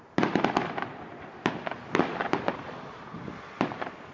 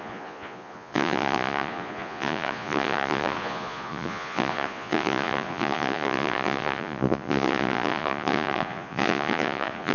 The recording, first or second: first